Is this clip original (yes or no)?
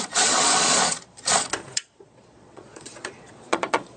no